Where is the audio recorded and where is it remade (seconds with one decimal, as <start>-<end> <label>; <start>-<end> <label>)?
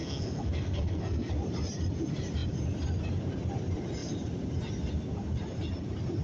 0.0-1.3 remade; 1.3-6.2 recorded